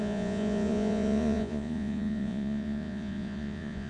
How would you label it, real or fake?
fake